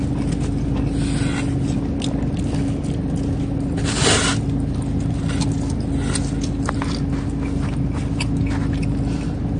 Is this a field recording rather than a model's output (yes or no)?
yes